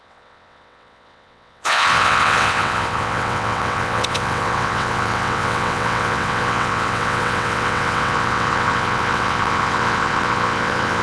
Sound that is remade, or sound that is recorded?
remade